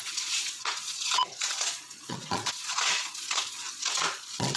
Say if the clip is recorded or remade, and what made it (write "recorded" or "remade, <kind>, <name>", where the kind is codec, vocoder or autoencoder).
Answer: remade, vocoder, Vocos